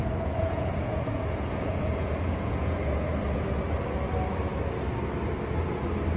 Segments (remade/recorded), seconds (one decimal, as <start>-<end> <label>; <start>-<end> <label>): 0.0-3.1 remade; 3.1-6.2 recorded